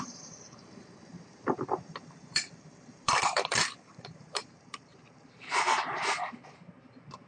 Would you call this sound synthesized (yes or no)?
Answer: yes